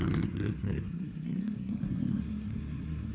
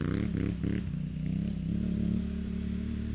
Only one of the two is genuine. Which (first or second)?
second